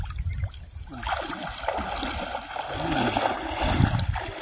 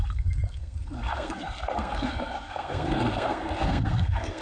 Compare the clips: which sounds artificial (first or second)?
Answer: second